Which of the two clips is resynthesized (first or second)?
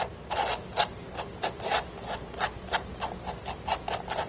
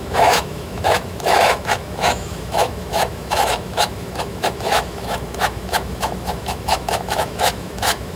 second